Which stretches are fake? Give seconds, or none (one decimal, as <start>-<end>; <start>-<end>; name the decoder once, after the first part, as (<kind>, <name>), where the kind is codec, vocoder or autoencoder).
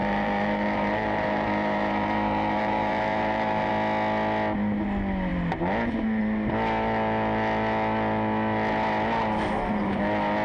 0.0-3.7 (vocoder, BigVGAN v2)